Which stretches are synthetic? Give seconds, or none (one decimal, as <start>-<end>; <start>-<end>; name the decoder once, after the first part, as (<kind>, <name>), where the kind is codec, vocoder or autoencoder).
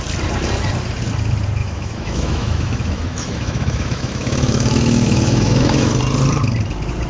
1.6-5.9 (autoencoder, DAC-VAE)